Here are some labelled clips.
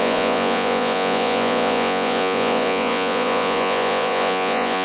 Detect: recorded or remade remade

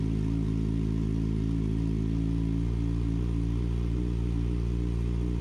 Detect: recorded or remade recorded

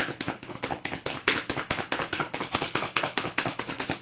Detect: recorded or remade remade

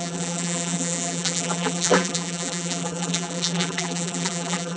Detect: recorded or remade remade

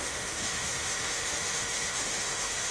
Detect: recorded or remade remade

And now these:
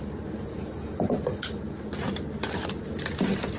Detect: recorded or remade recorded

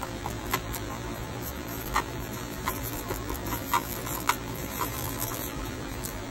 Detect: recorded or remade remade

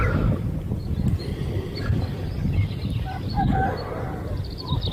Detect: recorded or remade recorded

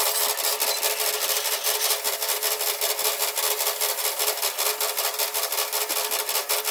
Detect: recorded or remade recorded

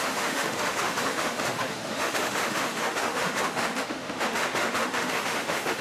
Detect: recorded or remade remade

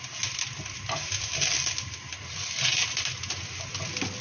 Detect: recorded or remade recorded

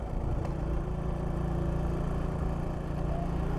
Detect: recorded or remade recorded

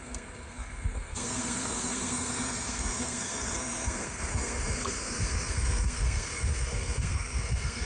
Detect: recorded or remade remade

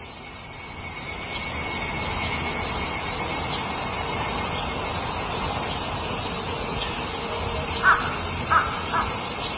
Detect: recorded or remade recorded